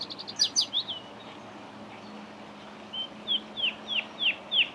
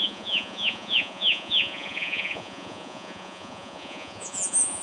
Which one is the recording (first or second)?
first